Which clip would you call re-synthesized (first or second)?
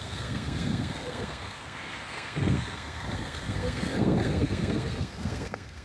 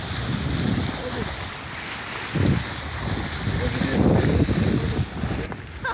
first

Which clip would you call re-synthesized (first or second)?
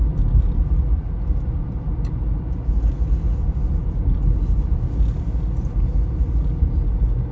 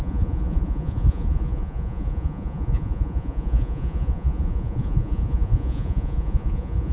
second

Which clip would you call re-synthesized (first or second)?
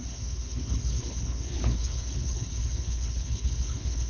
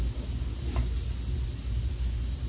first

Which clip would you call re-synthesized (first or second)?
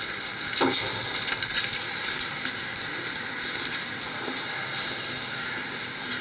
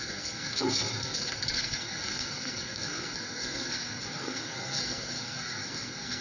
second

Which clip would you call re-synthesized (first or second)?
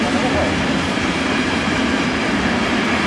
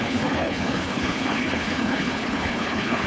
second